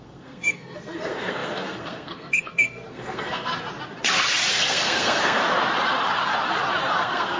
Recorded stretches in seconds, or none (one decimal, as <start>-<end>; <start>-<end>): 3.5-4.5; 5.4-6.9